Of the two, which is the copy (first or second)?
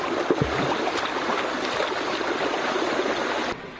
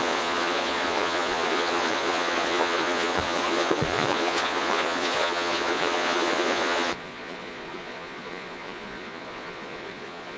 second